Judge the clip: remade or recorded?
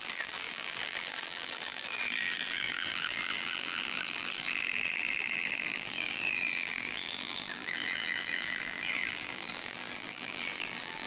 remade